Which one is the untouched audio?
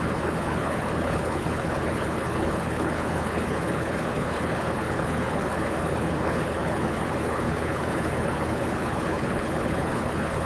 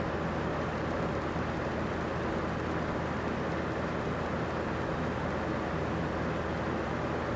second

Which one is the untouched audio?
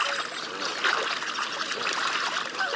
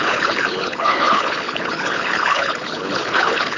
first